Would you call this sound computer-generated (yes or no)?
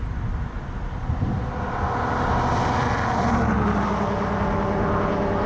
no